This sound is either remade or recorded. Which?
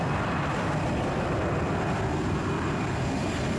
recorded